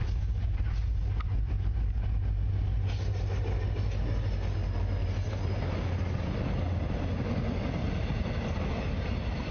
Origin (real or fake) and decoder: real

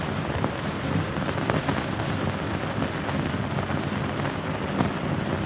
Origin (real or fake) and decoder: real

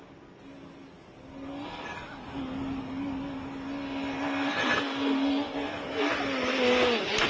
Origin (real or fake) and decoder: real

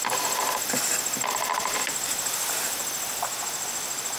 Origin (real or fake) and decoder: real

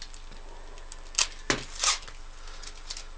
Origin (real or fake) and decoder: real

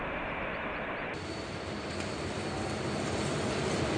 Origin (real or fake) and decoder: real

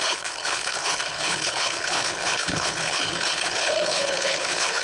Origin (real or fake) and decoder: fake, codec, HILCodec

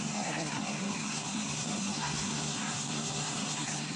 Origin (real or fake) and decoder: fake, codec, SNAC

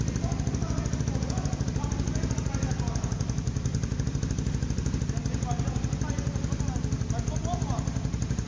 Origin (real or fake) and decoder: real